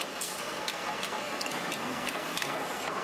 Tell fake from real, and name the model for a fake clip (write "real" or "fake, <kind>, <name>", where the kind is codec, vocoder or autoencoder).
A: fake, codec, SNAC